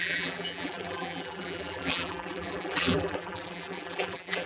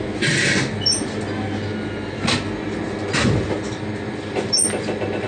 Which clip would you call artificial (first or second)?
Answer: first